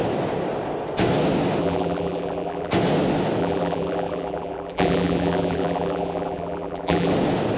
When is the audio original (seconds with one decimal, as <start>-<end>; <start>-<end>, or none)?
0.0-1.6; 2.7-3.4; 7.1-7.6